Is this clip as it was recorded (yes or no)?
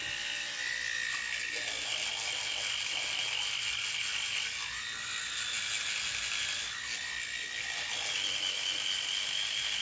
yes